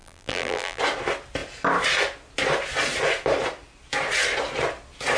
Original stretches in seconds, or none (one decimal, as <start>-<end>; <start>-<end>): 0.8-5.2